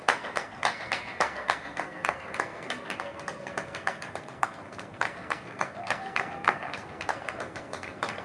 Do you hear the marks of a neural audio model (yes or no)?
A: yes